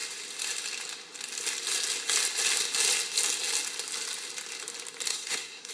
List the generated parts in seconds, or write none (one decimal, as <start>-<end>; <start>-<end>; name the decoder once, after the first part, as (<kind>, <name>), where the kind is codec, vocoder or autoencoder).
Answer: 5.1-5.7 (codec, SNAC)